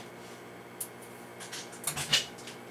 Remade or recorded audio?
recorded